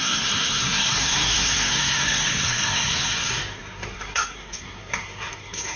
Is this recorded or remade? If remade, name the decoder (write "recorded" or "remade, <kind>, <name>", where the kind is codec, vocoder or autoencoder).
remade, codec, SNAC